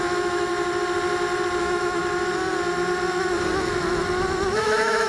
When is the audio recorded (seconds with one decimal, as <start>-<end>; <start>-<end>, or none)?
0.5-1.6; 2.0-4.6